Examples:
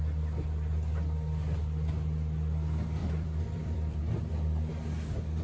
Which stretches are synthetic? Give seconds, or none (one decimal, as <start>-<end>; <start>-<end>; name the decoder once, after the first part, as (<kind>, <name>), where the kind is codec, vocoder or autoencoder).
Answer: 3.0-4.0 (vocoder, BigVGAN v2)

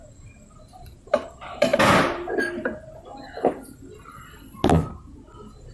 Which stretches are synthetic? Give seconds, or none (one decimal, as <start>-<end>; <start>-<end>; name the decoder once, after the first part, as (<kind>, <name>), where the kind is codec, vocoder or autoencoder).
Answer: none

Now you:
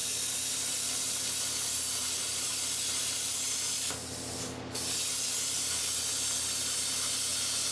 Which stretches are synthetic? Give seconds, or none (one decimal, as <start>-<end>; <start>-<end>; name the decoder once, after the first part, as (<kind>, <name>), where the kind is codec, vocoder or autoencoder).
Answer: 2.0-2.5 (vocoder, BigVGAN v2)

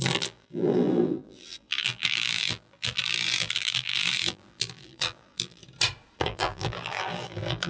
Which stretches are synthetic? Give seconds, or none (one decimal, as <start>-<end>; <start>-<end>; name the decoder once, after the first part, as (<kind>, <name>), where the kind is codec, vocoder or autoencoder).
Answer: 0.0-5.6 (vocoder, BigVGAN v2); 6.2-7.7

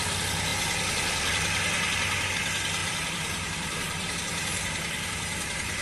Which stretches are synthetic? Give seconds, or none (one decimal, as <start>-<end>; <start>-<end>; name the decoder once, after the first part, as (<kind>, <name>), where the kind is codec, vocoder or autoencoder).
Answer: 2.8-5.8 (vocoder, BigVGAN v2)

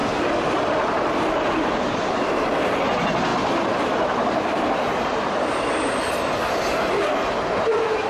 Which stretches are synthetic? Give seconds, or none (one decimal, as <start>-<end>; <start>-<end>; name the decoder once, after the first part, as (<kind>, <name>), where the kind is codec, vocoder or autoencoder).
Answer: 0.0-1.2 (vocoder, BigVGAN v2)